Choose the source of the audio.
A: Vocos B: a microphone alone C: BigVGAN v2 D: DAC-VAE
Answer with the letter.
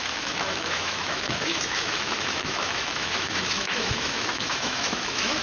D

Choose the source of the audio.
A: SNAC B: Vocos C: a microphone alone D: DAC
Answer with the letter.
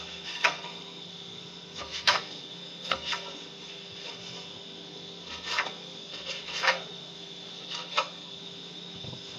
A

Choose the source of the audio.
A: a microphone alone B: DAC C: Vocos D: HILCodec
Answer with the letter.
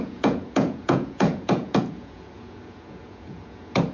C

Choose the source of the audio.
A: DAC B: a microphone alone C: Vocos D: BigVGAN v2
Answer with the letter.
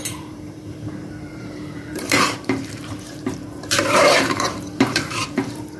D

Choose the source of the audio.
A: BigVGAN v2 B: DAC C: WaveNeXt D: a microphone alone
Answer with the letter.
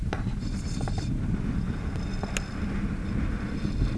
D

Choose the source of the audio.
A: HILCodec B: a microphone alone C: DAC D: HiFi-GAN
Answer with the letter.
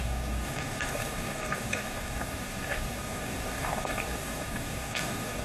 C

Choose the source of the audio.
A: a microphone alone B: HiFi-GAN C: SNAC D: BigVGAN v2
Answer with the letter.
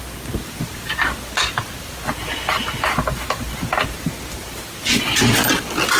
A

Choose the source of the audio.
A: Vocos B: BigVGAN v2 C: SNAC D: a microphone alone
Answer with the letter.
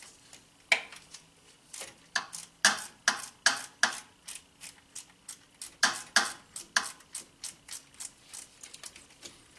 D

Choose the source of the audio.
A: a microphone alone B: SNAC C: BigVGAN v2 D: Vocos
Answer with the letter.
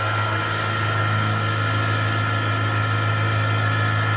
A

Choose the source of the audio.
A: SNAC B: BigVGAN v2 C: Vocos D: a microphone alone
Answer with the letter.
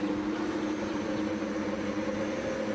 D